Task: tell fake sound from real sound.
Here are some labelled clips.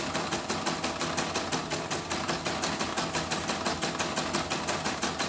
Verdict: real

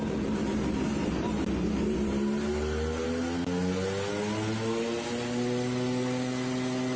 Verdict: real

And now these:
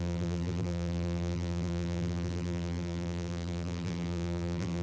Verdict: fake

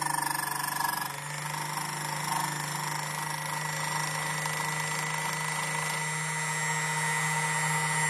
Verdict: real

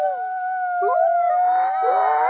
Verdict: real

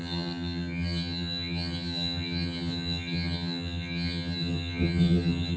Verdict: fake